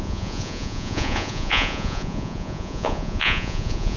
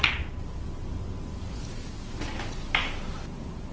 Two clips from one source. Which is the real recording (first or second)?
second